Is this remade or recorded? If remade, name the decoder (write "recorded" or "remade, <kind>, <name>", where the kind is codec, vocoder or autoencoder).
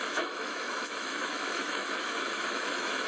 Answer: remade, autoencoder, DAC-VAE